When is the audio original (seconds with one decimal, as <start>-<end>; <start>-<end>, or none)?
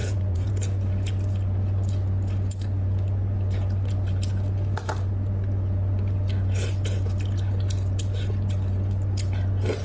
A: 0.5-9.8